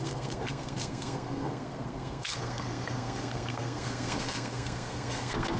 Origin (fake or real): fake